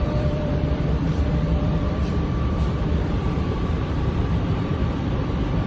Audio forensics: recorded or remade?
remade